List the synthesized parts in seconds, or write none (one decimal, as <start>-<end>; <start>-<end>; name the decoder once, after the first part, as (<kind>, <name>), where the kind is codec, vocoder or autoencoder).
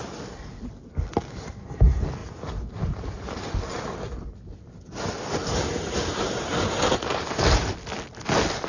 2.2-3.6 (vocoder, BigVGAN v2); 5.5-7.7